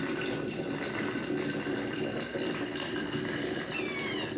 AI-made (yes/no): no